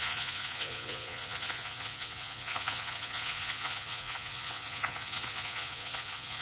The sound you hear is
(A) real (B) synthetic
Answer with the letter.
B